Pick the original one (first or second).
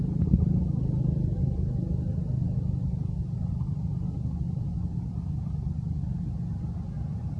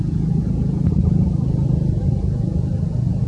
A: first